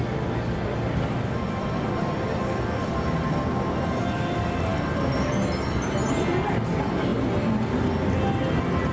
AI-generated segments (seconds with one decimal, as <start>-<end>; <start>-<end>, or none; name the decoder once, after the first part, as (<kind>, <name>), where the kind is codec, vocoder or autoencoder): none